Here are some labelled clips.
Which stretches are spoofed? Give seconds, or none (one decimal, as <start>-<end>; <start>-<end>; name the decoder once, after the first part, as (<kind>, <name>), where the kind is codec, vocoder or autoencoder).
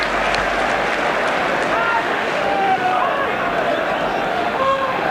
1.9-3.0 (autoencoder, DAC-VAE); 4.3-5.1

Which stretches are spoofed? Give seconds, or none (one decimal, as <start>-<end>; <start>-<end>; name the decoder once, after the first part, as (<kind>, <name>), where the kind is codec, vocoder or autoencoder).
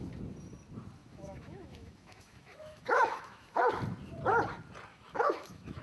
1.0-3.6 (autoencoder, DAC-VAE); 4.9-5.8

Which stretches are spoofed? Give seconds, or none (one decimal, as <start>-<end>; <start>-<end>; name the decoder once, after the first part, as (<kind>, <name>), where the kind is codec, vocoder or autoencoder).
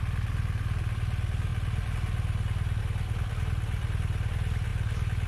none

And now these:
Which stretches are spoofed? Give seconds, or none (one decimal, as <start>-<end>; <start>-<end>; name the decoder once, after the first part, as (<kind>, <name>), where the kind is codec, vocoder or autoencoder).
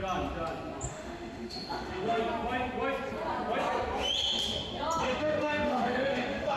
0.9-2.2 (autoencoder, DAC-VAE); 5.0-6.6